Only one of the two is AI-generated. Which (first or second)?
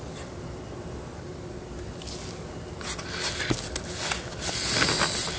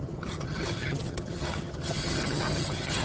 second